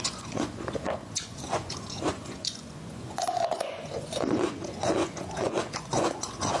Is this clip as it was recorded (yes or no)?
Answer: no